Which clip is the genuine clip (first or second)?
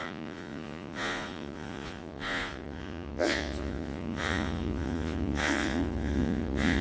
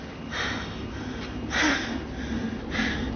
second